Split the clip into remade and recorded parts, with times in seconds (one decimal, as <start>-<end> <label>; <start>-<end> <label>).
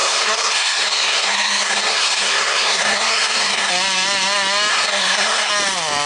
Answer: 0.0-3.7 remade; 3.7-4.7 recorded; 4.7-5.5 remade; 5.5-6.1 recorded